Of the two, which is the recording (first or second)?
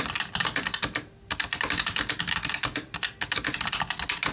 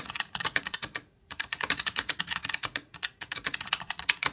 first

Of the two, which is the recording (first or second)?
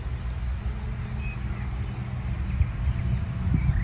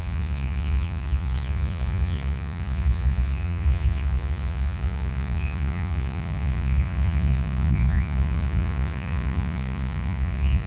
first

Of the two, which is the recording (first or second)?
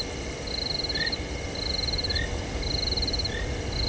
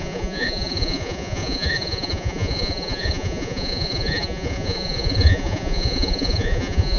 first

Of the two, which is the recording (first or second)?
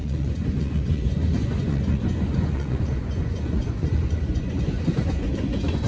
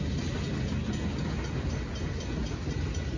second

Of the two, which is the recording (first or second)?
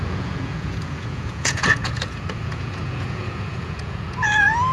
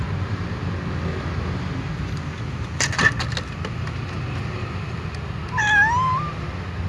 second